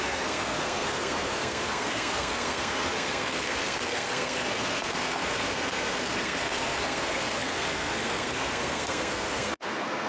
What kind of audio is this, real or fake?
fake